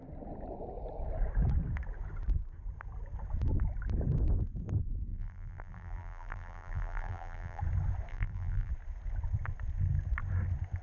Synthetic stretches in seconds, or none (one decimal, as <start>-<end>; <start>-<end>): 5.1-7.6; 8.1-8.7